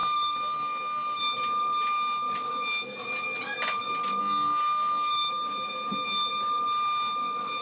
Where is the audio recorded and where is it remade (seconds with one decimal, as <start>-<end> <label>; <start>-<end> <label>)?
0.0-1.2 remade; 1.2-4.2 recorded; 4.2-5.3 remade; 5.3-7.6 recorded